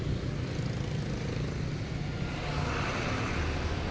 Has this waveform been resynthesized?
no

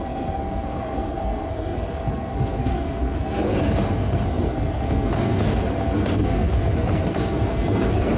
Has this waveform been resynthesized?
yes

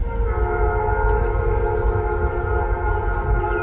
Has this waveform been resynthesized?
no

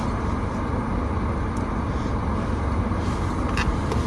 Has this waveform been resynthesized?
no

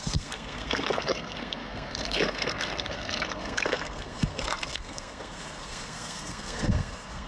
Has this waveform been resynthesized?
yes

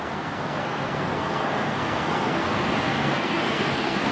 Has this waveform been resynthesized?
yes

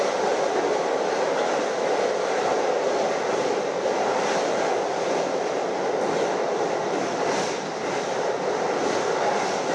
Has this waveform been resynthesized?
no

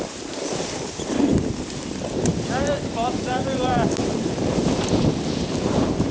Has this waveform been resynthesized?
yes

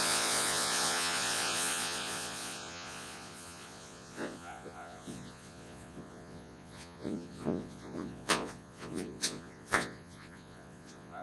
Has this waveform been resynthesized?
yes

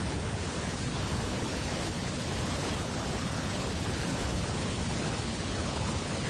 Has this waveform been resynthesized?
yes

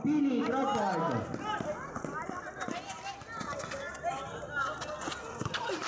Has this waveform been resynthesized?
no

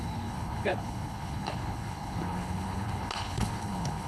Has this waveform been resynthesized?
yes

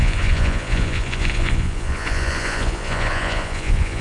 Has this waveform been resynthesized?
yes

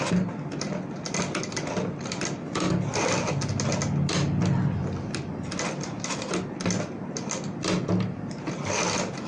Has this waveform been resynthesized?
no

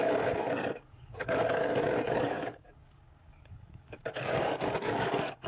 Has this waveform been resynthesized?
yes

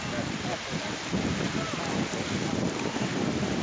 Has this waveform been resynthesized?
no